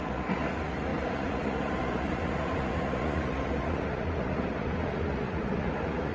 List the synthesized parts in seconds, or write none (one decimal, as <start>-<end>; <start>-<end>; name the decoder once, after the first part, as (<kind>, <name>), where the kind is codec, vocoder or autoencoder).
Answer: 0.0-6.1 (vocoder, Vocos)

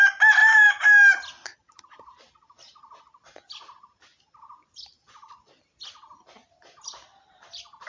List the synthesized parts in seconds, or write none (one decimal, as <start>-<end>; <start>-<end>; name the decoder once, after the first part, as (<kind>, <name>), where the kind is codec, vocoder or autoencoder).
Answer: none

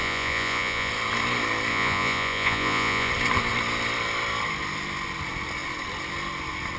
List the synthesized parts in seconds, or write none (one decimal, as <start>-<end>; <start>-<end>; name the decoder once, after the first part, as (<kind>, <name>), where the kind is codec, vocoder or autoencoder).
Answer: 0.0-0.9 (vocoder, Vocos); 1.7-3.1

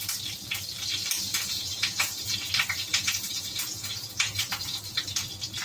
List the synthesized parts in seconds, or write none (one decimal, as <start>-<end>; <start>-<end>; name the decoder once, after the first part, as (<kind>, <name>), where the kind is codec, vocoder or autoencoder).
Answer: 1.3-2.5 (vocoder, Vocos); 2.9-4.8

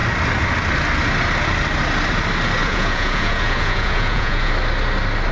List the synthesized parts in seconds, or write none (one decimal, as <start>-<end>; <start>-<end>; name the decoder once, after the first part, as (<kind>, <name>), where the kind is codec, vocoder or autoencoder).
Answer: 2.6-4.5 (vocoder, Vocos)

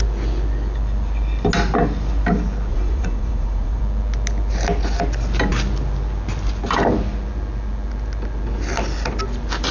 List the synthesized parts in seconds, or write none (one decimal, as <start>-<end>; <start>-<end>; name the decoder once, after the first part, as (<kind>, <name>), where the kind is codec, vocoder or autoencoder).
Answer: 2.7-3.8 (vocoder, Vocos)

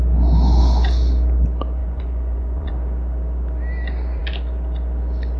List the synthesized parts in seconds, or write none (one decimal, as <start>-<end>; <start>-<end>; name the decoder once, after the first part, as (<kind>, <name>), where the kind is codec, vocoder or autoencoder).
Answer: 1.8-2.7 (vocoder, Vocos)

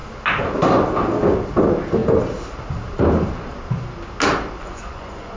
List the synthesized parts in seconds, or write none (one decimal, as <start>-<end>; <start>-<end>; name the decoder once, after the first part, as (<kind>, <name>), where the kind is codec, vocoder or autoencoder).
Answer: 4.6-5.4 (vocoder, Vocos)